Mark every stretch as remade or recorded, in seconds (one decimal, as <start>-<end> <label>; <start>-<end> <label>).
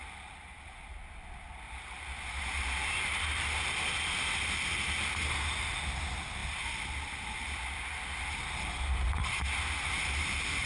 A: 0.0-10.6 recorded